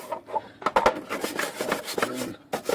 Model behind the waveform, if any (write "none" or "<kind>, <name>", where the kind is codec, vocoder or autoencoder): none